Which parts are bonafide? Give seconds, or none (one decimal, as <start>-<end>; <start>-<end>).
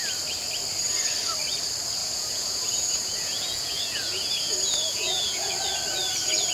0.0-2.0; 5.5-6.5